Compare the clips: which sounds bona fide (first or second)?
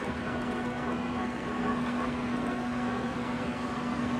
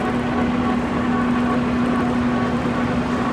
second